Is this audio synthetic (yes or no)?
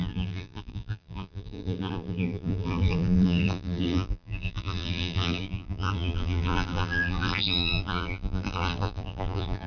yes